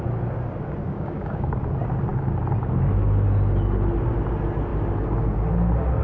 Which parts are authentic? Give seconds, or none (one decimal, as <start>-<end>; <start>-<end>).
0.0-0.8; 1.6-6.0